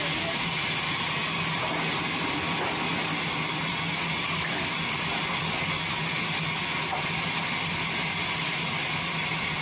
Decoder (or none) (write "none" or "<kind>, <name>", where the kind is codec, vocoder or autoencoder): none